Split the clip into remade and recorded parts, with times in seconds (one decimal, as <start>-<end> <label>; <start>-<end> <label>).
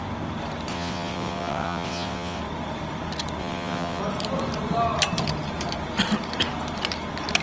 0.0-0.7 recorded; 0.7-2.4 remade; 2.4-3.4 recorded; 3.4-4.0 remade; 4.0-7.4 recorded